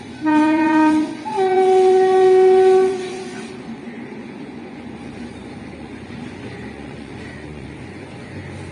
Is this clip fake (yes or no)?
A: yes